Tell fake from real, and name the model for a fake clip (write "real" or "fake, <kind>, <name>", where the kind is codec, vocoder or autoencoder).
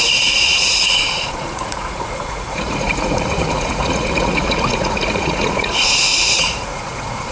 fake, vocoder, Vocos